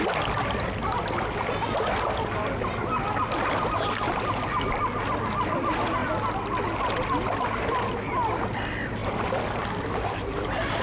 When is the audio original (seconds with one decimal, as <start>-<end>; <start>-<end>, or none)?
0.0-10.8